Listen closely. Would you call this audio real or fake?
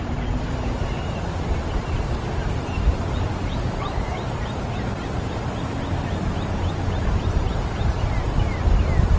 real